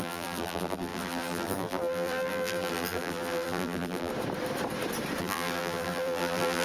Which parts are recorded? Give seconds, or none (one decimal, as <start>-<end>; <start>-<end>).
4.1-5.2